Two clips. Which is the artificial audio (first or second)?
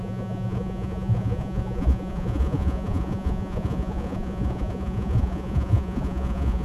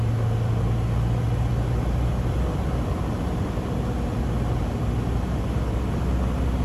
first